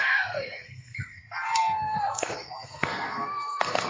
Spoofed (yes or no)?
yes